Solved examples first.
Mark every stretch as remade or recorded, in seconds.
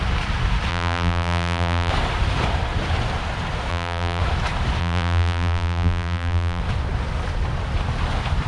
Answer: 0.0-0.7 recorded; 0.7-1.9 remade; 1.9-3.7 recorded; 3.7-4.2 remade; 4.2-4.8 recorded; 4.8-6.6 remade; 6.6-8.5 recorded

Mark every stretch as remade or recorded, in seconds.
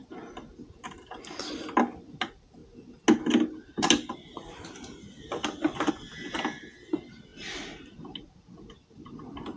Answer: 0.0-9.6 recorded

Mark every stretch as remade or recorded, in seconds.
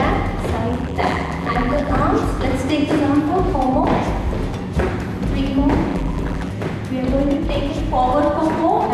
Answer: 0.0-0.7 recorded; 0.7-1.9 remade; 1.9-5.9 recorded; 5.9-6.5 remade; 6.5-8.9 recorded